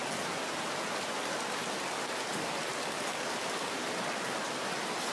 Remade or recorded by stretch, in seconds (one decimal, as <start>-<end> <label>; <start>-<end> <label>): 0.0-5.1 recorded